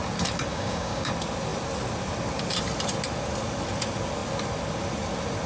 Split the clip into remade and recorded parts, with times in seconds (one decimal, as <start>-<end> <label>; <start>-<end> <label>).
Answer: 0.0-0.5 recorded; 0.5-1.1 remade; 1.1-5.5 recorded